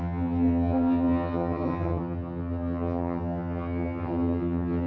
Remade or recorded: remade